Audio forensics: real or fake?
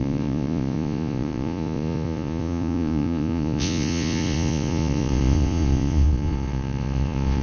fake